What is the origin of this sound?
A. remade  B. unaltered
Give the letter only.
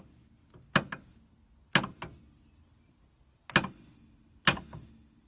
B